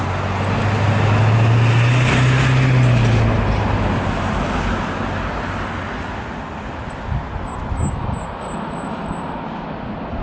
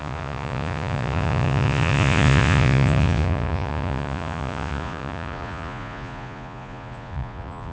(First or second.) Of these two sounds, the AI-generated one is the second